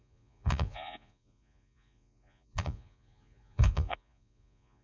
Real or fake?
fake